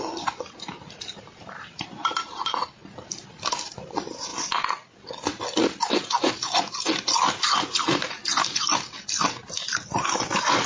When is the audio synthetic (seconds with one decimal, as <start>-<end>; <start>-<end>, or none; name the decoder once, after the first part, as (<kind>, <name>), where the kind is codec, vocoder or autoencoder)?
0.0-2.8 (vocoder, BigVGAN v2); 3.7-4.3; 7.4-8.2; 9.2-10.7